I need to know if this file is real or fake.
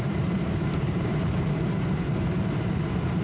fake